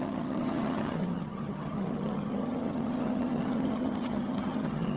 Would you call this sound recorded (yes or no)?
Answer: no